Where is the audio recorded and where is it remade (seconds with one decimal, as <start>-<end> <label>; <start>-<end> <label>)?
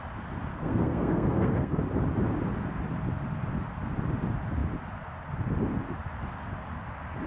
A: 0.0-0.5 recorded; 0.5-1.8 remade; 1.8-7.3 recorded